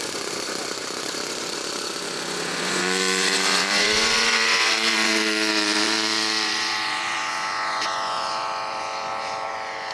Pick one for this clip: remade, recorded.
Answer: remade